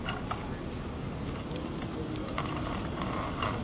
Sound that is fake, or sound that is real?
real